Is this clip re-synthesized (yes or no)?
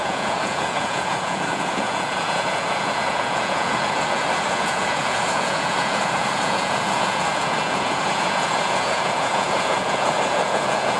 yes